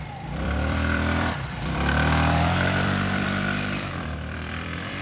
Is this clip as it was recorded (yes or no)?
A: no